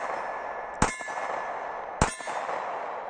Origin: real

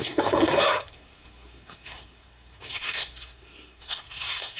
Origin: fake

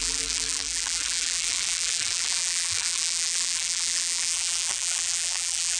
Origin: fake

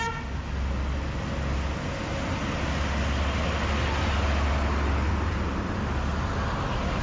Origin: real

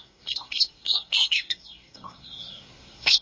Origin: fake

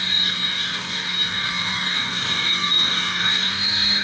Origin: fake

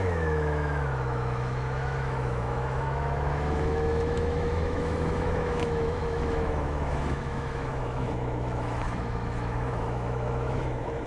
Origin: fake